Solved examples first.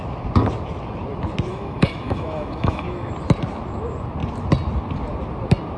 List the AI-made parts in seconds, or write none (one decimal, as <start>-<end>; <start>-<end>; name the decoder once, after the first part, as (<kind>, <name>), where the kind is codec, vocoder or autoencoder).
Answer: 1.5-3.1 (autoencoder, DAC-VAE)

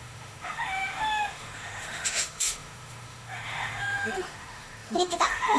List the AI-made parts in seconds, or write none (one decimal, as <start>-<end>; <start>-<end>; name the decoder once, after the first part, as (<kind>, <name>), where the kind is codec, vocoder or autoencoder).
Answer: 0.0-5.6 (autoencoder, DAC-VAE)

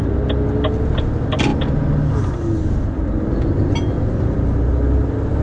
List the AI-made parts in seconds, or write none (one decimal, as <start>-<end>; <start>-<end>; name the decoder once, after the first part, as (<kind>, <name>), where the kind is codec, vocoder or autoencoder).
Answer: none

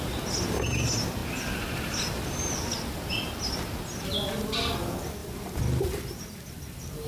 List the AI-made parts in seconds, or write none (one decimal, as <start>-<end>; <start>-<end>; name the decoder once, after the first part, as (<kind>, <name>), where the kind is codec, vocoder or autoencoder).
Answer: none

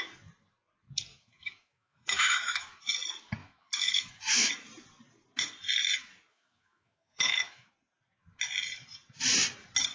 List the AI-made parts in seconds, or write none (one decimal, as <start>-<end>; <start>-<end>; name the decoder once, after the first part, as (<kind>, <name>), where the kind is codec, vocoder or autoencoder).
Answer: 1.1-2.8 (autoencoder, DAC-VAE); 3.4-4.5; 6.3-7.7

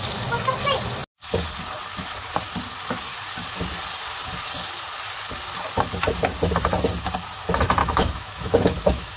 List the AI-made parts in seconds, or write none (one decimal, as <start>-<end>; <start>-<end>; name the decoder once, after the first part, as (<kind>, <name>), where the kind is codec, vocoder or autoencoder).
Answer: 7.8-9.2 (autoencoder, DAC-VAE)

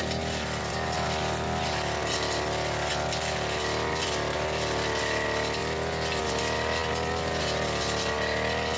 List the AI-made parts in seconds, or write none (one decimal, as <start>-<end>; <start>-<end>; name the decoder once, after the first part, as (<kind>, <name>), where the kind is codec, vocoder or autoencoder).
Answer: none